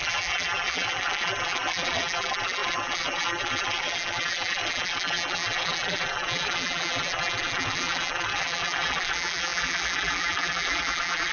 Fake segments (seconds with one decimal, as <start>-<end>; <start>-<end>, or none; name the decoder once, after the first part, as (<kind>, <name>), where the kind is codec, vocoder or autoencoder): 0.0-11.3 (vocoder, BigVGAN v2)